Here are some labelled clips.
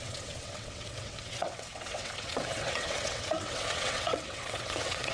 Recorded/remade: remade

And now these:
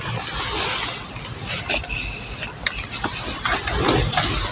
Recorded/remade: recorded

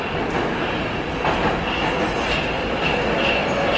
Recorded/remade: recorded